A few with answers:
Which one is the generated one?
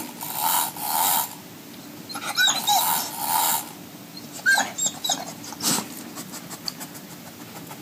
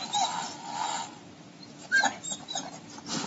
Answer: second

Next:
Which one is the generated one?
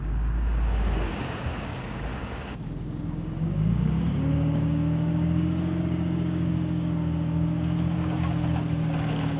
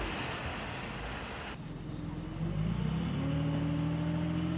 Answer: first